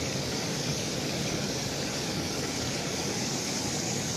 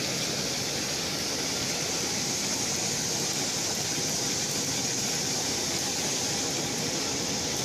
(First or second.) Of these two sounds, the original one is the second